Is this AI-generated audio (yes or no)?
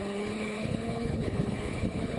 yes